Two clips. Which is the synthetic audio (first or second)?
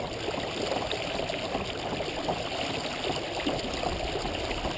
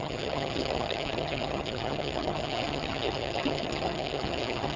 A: second